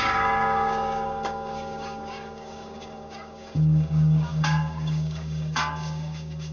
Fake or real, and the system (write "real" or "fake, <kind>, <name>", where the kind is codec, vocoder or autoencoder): fake, codec, DAC